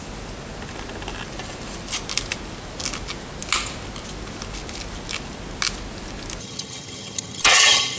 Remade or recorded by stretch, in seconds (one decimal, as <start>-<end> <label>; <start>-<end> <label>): 0.0-6.4 recorded; 6.4-8.0 remade